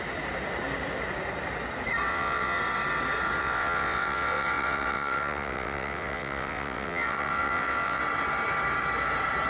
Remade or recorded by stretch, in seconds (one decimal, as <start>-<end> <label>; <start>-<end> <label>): 0.0-2.1 recorded; 2.1-2.6 remade; 2.6-3.4 recorded; 3.4-8.0 remade; 8.0-9.5 recorded